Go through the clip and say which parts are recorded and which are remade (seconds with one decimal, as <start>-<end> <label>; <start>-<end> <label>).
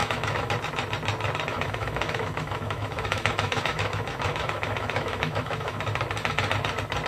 0.0-0.5 remade; 0.5-1.5 recorded; 1.5-5.8 remade; 5.8-7.1 recorded